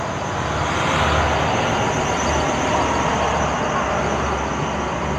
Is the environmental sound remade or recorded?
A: recorded